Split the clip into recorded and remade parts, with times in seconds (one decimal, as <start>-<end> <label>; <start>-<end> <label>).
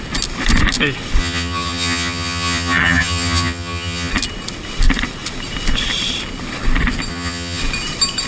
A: 0.0-1.2 recorded; 1.2-4.1 remade; 4.1-7.1 recorded; 7.1-7.6 remade; 7.6-8.3 recorded